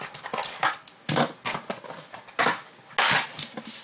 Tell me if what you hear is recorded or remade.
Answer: recorded